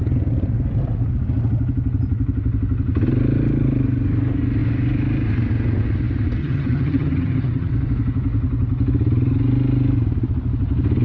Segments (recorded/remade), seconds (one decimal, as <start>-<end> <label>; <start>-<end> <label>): 0.0-6.4 recorded; 6.4-7.7 remade; 7.7-11.0 recorded